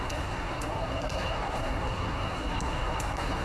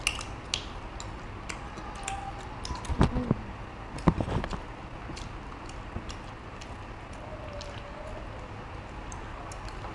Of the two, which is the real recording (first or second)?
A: second